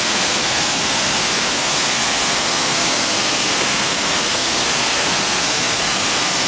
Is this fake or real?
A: fake